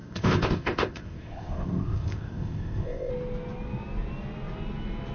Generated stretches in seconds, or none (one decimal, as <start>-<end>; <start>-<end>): 0.0-3.1